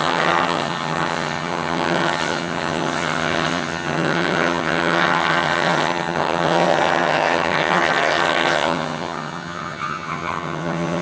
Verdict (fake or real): fake